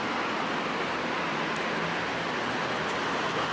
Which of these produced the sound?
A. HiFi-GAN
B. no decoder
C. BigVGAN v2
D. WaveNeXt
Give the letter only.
B